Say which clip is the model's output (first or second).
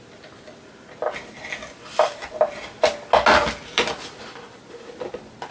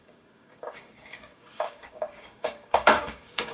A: second